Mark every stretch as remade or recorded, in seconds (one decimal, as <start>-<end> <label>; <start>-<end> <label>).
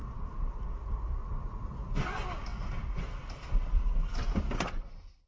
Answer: 0.0-5.3 recorded